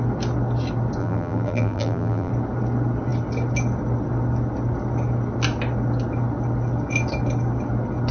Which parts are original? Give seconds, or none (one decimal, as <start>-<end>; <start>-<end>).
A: 0.0-1.0; 2.3-8.1